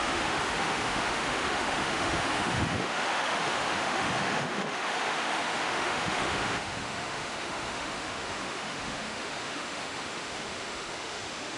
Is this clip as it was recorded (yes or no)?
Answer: no